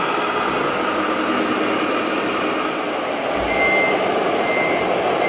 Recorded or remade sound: recorded